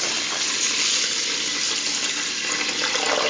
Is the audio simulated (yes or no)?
no